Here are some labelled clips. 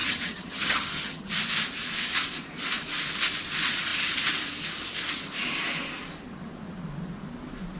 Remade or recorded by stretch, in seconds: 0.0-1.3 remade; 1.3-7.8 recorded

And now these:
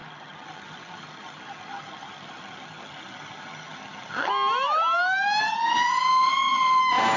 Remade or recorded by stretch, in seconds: 0.0-4.3 remade; 4.3-5.4 recorded; 5.4-6.8 remade; 6.8-7.2 recorded

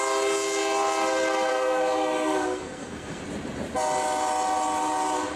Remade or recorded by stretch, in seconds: 0.0-1.5 recorded; 1.5-3.2 remade; 3.2-5.4 recorded

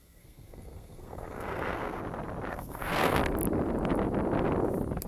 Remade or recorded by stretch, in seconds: 0.0-2.0 remade; 2.0-2.5 recorded; 2.5-3.2 remade; 3.2-5.1 recorded

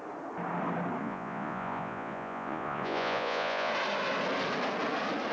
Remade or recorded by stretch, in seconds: 0.0-1.0 recorded; 1.0-3.7 remade; 3.7-5.3 recorded

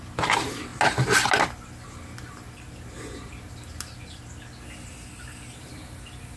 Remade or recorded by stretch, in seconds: 0.0-6.4 recorded

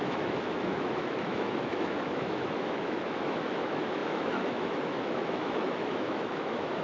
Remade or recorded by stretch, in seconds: 0.0-6.8 remade